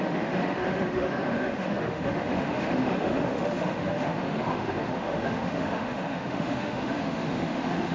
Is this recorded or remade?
remade